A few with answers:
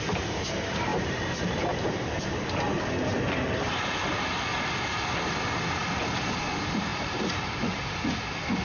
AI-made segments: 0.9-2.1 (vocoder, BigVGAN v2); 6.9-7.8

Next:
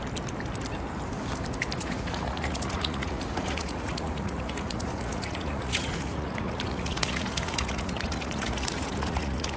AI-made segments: 1.8-9.6 (vocoder, Vocos)